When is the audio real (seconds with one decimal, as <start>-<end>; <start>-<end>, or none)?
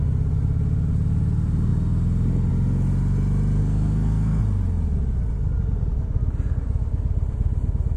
0.0-3.6; 4.4-8.0